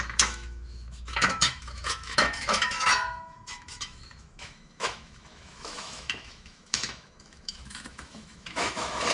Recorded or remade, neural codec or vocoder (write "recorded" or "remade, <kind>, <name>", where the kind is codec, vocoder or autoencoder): remade, autoencoder, DAC-VAE